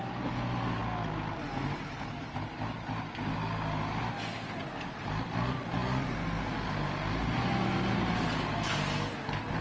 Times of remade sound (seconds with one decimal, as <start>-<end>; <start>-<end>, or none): none

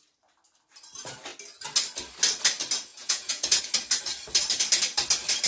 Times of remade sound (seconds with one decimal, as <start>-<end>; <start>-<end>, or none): 2.9-3.6

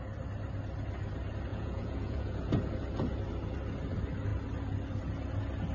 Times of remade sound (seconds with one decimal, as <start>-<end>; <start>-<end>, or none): 1.5-2.5

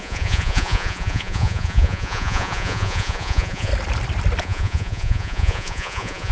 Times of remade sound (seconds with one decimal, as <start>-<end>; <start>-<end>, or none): 0.0-3.7; 4.4-6.3

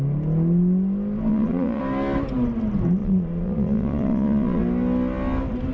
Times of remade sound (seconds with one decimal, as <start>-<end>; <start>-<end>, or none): 1.3-1.8; 3.0-4.6

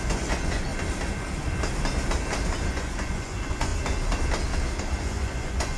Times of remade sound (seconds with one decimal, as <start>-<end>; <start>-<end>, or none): 0.0-0.7; 2.7-3.7; 5.0-5.8

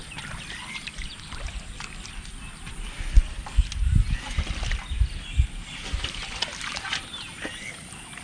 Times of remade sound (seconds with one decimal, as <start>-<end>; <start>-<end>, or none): none

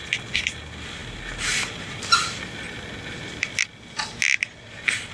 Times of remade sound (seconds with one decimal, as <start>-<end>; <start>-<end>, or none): none